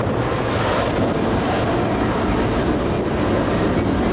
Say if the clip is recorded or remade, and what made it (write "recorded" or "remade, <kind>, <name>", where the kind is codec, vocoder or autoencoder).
recorded